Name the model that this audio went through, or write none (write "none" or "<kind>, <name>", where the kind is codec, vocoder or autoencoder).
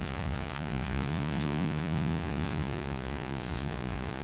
vocoder, Vocos